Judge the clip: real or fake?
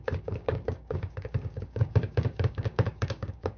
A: fake